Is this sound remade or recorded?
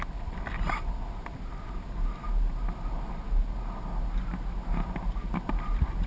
recorded